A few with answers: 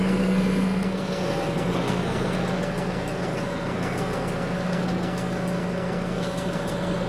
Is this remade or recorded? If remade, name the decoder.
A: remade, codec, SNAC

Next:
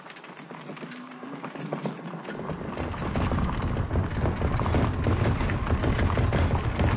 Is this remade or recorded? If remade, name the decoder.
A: recorded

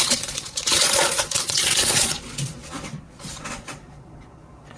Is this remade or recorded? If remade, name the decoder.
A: remade, vocoder, Vocos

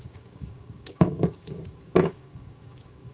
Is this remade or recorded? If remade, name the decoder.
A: remade, codec, DAC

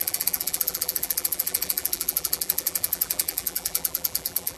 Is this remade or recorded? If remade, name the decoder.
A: remade, vocoder, BigVGAN v2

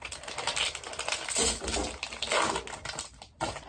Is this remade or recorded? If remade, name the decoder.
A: recorded